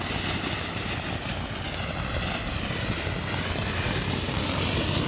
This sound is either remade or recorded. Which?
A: recorded